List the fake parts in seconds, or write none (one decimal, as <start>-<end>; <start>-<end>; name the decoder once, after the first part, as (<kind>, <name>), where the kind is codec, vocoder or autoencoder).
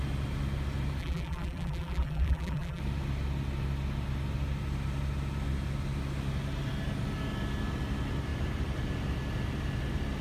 1.0-2.8 (vocoder, BigVGAN v2)